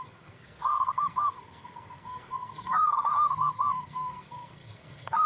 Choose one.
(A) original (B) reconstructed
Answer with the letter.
B